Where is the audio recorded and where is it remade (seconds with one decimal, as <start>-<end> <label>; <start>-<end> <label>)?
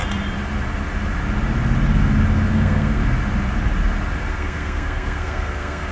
0.0-2.5 recorded; 2.5-3.0 remade; 3.0-4.3 recorded; 4.3-5.9 remade